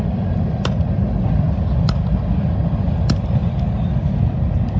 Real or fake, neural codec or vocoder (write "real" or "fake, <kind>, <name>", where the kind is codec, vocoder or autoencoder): real